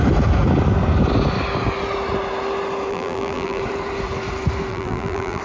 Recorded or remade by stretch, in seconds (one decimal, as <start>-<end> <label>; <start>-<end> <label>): 0.0-2.9 recorded; 2.9-3.6 remade; 3.6-4.7 recorded; 4.7-5.4 remade